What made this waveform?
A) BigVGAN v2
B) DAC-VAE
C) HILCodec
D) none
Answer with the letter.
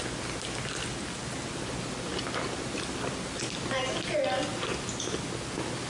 D